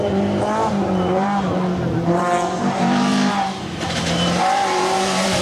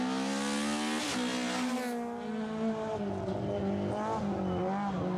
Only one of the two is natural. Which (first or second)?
second